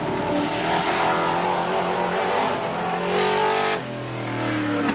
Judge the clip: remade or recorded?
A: recorded